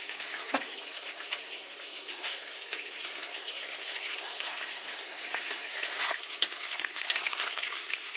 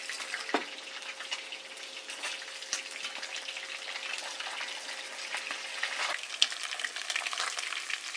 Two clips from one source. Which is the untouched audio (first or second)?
second